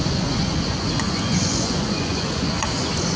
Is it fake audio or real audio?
fake